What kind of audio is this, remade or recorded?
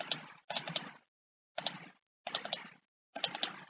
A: recorded